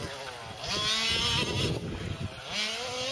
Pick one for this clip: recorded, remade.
recorded